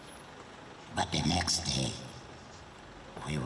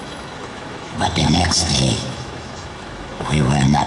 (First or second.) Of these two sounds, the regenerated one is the second